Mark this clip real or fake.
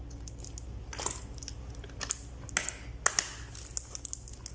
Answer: real